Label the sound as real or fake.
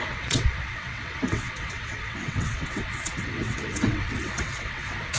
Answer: fake